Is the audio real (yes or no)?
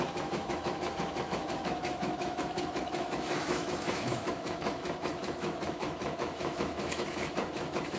no